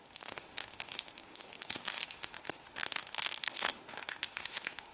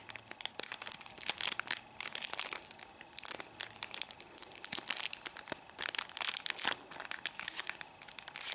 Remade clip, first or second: first